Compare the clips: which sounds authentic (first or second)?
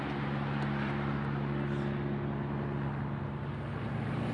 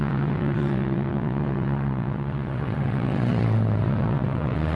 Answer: first